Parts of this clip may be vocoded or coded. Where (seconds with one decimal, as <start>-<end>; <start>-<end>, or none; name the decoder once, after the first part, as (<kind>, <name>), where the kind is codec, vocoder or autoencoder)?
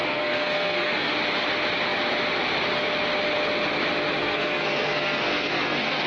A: 0.0-1.1 (codec, SNAC); 4.2-6.1